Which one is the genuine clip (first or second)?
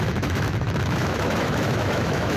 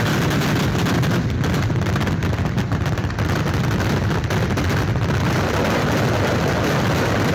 second